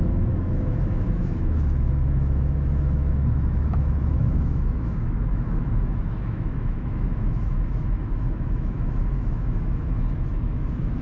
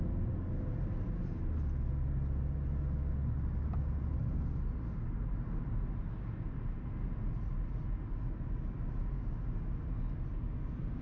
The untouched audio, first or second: second